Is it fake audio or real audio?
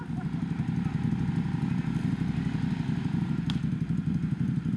real